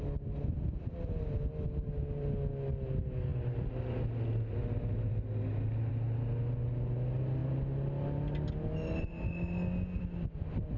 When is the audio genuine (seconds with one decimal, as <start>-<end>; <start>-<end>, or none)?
0.0-10.8